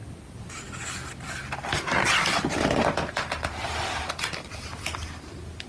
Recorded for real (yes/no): yes